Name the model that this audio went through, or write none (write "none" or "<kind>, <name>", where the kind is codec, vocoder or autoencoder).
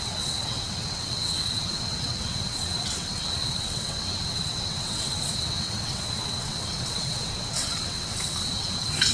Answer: vocoder, WaveNeXt